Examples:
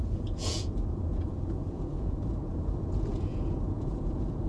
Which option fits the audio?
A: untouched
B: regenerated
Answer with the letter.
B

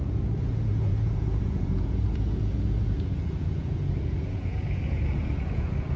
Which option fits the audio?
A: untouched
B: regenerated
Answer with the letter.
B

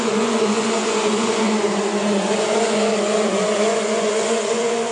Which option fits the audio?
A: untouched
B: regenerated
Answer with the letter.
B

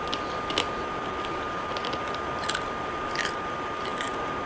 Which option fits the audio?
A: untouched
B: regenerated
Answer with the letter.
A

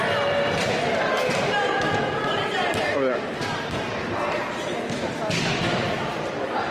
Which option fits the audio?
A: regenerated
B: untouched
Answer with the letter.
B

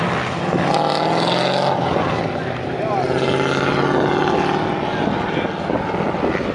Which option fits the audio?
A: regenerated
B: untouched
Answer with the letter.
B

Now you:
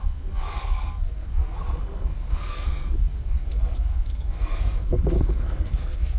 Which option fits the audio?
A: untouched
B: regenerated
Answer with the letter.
B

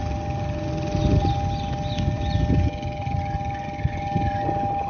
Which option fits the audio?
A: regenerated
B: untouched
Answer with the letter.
B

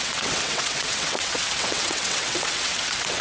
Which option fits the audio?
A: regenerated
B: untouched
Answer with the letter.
A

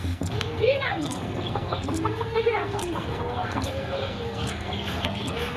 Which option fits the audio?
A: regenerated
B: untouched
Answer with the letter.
A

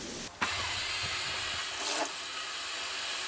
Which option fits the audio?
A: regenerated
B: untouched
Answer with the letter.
B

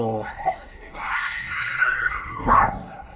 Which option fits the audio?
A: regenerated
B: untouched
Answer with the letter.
A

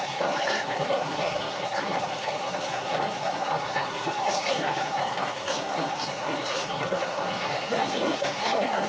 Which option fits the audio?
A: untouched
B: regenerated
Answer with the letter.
B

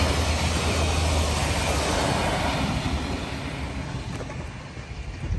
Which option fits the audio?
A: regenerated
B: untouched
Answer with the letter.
B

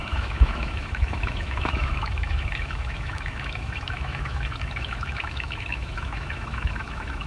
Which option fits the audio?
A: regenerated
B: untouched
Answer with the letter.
A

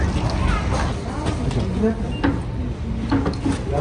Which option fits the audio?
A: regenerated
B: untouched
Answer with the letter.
B